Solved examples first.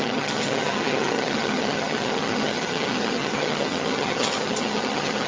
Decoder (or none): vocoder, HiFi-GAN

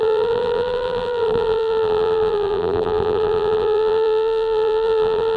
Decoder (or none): vocoder, BigVGAN v2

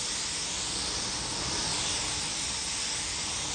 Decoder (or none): none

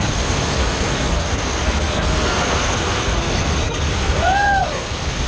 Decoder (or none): codec, SNAC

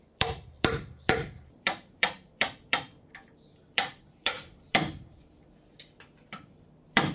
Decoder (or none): vocoder, BigVGAN v2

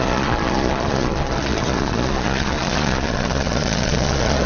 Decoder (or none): vocoder, Vocos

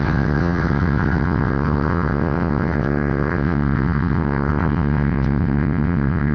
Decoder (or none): vocoder, WaveNeXt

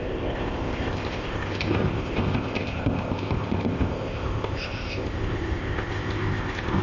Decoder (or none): codec, ZipCodec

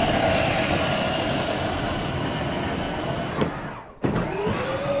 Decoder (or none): none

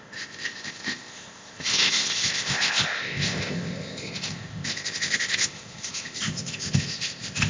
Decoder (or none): codec, ZipCodec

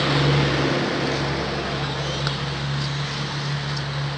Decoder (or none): none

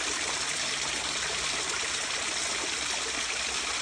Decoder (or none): none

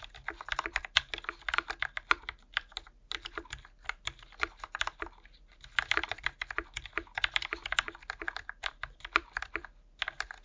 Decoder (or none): none